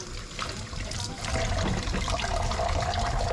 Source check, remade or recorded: recorded